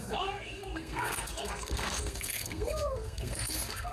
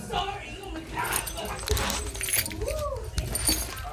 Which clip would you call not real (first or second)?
first